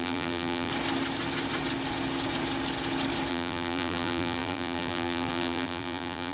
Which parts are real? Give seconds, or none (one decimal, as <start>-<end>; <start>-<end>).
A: 0.7-3.3